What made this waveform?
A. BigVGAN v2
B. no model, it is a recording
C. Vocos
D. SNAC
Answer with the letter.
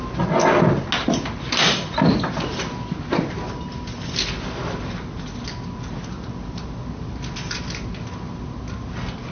B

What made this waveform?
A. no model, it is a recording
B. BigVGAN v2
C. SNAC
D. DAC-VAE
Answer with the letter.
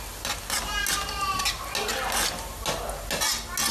A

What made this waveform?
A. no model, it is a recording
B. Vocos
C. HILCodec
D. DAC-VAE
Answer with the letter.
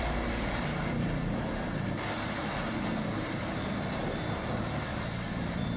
A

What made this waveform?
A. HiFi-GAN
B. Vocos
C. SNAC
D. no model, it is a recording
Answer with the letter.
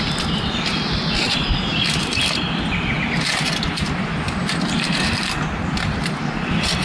D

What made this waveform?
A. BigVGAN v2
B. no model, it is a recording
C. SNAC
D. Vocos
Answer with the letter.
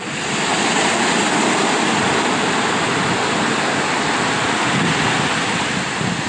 B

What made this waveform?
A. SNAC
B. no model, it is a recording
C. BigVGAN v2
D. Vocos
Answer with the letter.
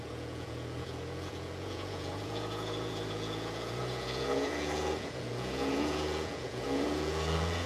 D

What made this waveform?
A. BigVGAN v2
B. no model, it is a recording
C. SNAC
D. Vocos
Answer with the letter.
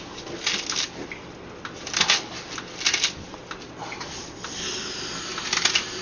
B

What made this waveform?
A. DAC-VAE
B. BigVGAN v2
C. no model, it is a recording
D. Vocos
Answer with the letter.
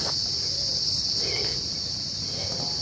C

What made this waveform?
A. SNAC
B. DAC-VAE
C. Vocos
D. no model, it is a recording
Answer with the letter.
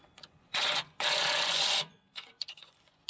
C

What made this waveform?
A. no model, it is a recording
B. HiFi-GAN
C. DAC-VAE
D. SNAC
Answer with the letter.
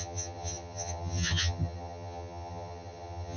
B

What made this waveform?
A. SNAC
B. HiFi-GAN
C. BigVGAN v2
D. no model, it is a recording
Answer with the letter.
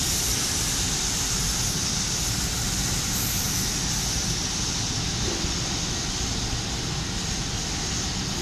D